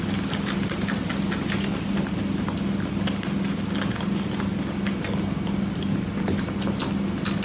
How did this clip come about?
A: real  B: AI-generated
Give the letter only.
A